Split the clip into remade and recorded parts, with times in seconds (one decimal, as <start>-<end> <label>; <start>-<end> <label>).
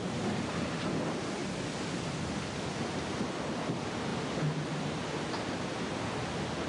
0.0-6.7 recorded